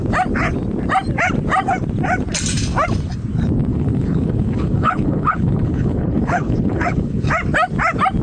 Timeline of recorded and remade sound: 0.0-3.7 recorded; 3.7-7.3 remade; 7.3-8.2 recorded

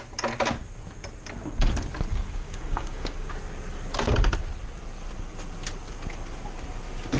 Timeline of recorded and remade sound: 0.0-2.1 recorded; 2.1-3.3 remade; 3.3-7.2 recorded

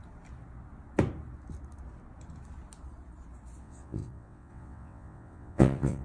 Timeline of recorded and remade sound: 0.0-3.6 recorded; 3.6-6.0 remade

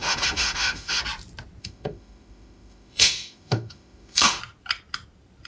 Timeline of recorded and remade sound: 0.0-1.0 remade; 1.0-1.6 recorded; 1.6-4.4 remade; 4.4-5.5 recorded

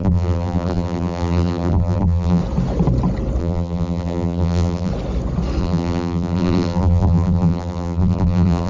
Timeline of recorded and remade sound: 0.0-2.4 remade; 2.4-3.4 recorded; 3.4-4.9 remade; 4.9-5.6 recorded; 5.6-8.7 remade